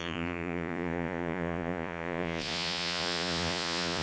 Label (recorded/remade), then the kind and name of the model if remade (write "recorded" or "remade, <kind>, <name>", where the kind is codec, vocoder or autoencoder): remade, vocoder, Vocos